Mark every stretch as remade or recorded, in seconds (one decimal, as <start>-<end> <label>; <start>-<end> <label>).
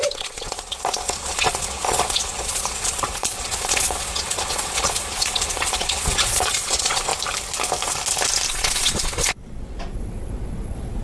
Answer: 0.0-7.1 remade; 7.1-8.5 recorded; 8.5-11.0 remade